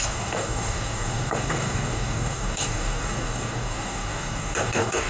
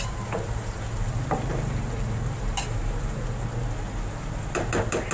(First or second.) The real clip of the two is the second